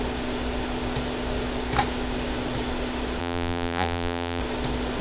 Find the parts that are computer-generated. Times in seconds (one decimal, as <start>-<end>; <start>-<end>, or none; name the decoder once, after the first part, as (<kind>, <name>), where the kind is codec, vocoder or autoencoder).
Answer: 3.2-4.4 (vocoder, BigVGAN v2)